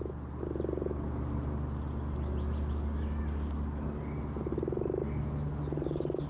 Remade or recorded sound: remade